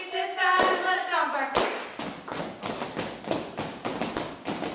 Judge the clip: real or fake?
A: real